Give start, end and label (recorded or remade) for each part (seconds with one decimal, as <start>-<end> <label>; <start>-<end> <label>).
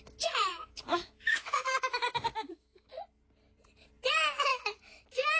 0.0-0.5 recorded; 0.5-2.9 remade; 2.9-4.5 recorded; 4.5-5.4 remade